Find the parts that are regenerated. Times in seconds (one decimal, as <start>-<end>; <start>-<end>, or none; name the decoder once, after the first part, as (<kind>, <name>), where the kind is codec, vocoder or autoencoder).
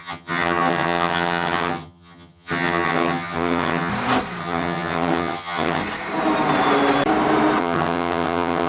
0.0-3.9 (vocoder, HiFi-GAN); 4.4-5.8; 7.6-8.7